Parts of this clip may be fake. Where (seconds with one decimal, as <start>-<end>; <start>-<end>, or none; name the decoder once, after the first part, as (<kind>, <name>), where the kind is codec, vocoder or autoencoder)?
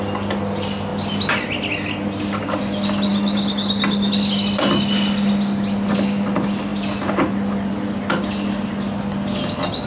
none